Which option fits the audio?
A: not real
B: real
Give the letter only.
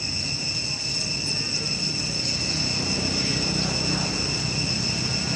B